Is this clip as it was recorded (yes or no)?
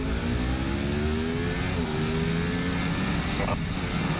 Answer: yes